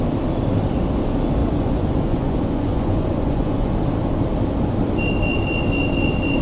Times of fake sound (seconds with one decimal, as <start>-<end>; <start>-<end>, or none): 1.4-3.7